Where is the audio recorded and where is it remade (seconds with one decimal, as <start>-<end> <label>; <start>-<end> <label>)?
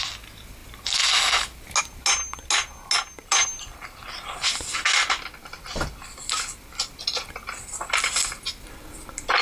0.0-9.4 recorded